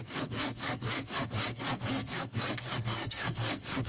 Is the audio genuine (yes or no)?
no